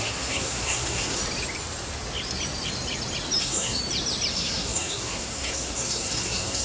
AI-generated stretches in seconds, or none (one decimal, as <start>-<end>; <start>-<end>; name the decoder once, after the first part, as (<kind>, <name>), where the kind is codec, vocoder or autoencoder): 0.0-1.2 (codec, SNAC); 3.4-3.8; 4.3-6.6